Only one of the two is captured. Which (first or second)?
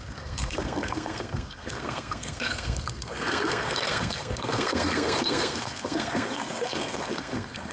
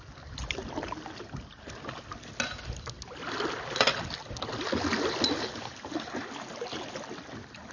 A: second